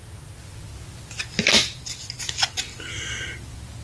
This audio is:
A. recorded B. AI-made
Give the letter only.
A